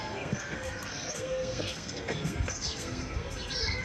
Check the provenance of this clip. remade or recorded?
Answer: remade